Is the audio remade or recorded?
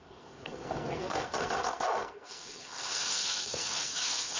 remade